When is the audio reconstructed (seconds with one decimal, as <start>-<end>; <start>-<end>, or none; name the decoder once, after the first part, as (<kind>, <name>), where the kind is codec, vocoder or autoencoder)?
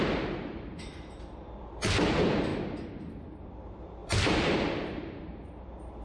0.0-2.5 (vocoder, BigVGAN v2); 3.4-6.0